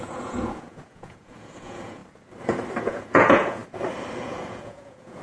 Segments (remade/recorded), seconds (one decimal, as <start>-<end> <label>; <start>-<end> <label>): 0.0-2.0 remade; 2.0-2.8 recorded; 2.8-3.6 remade; 3.6-4.2 recorded; 4.2-5.2 remade